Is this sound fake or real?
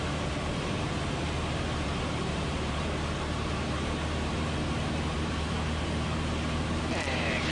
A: fake